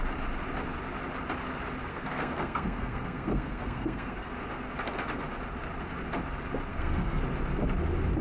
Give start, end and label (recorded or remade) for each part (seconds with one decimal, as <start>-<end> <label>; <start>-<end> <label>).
0.0-1.9 recorded; 1.9-4.3 remade; 4.3-6.7 recorded; 6.7-7.2 remade; 7.2-8.2 recorded